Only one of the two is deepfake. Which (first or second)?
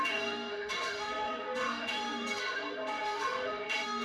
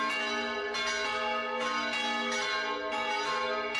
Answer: first